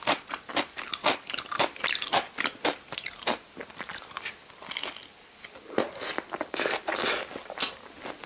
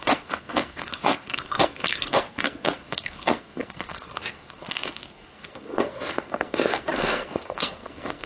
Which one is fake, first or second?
second